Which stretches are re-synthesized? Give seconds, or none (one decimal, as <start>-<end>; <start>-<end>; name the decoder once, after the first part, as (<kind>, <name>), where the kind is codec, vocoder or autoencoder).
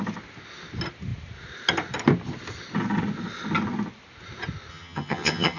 4.7-5.6 (vocoder, HiFi-GAN)